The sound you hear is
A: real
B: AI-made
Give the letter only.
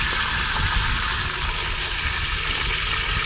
A